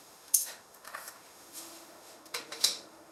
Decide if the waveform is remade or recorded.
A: remade